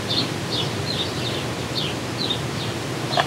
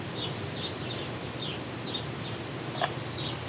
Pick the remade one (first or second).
second